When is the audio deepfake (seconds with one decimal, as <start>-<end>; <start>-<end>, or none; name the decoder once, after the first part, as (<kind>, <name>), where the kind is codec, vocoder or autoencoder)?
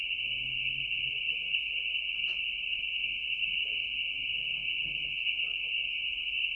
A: none